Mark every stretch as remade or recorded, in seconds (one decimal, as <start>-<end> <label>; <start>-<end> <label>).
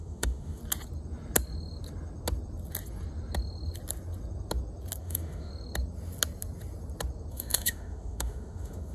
0.0-0.6 remade; 0.6-5.0 recorded; 5.0-5.5 remade; 5.5-7.3 recorded; 7.3-8.9 remade